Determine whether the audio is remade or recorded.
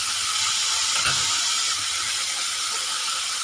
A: recorded